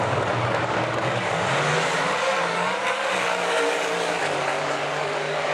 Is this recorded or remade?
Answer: remade